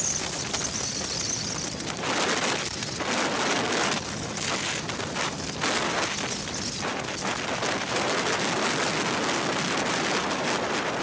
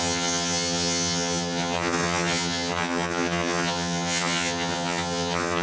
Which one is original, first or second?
first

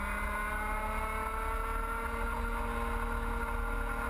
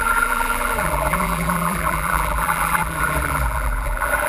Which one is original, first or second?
first